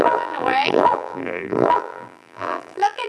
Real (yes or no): no